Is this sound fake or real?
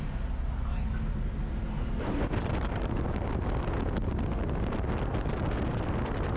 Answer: real